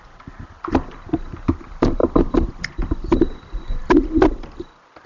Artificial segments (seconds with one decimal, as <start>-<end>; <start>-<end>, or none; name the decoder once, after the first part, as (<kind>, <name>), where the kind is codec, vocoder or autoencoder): none